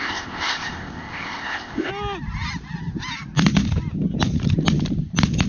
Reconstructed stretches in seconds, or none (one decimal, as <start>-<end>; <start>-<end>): 0.0-1.9